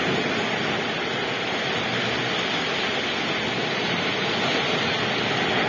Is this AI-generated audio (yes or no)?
no